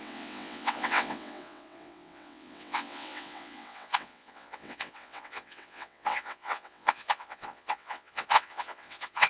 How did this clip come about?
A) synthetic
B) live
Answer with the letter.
A